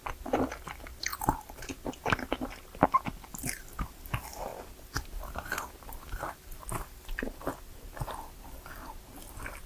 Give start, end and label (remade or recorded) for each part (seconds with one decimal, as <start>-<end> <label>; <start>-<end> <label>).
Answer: 0.0-3.3 recorded; 3.3-4.1 remade; 4.1-9.7 recorded